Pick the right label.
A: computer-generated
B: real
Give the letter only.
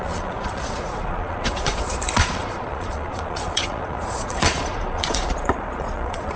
A